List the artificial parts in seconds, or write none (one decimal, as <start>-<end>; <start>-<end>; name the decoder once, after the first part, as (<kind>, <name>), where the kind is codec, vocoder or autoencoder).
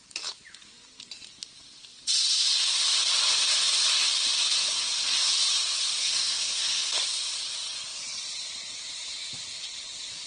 6.0-7.0 (codec, SNAC)